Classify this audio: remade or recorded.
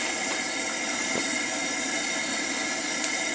recorded